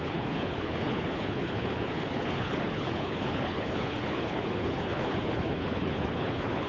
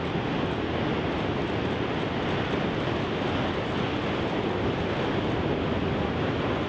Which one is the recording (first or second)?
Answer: second